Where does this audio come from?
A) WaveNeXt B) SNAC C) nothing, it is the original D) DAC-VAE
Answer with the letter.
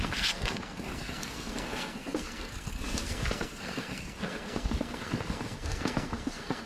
B